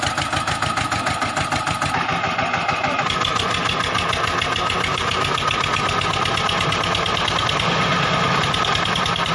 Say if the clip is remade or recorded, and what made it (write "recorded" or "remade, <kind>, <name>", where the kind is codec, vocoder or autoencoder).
recorded